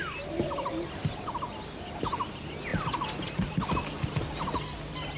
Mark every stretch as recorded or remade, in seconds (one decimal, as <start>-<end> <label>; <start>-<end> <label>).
0.0-5.2 recorded